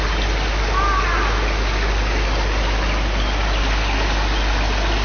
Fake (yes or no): no